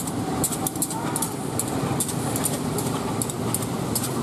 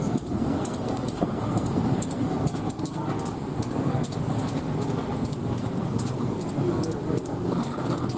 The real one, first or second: first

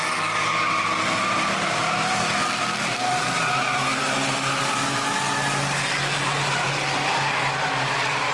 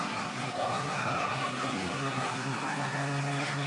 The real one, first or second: first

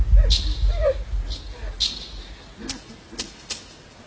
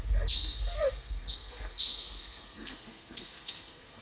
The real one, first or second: first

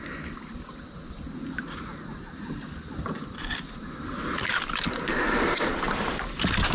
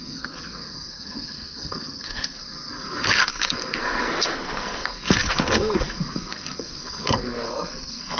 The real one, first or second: first